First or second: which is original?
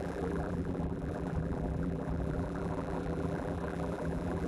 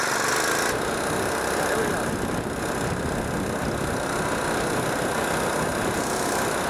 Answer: second